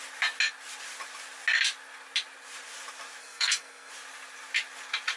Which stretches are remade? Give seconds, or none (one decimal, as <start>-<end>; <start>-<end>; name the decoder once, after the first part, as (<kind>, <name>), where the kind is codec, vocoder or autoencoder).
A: 3.2-3.9 (codec, SNAC)